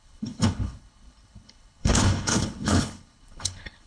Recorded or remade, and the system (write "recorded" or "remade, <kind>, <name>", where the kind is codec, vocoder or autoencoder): remade, codec, HILCodec